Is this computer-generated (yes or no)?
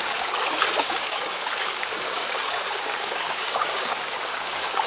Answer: yes